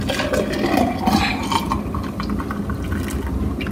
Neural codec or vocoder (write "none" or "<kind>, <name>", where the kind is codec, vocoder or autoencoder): none